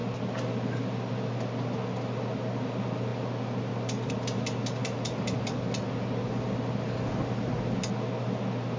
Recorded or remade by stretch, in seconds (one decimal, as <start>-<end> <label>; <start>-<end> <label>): 0.0-4.8 recorded; 4.8-5.5 remade; 5.5-8.8 recorded